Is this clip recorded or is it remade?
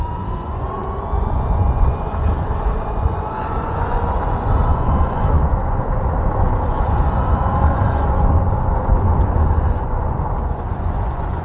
remade